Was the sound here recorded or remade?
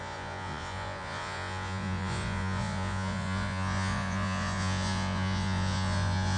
remade